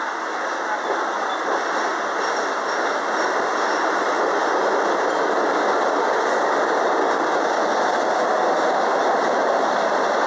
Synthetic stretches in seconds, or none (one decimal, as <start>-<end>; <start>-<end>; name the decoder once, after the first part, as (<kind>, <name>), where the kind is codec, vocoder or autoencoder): none